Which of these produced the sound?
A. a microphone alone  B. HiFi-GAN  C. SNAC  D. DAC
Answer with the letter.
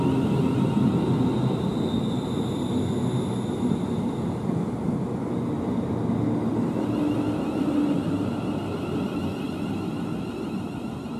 A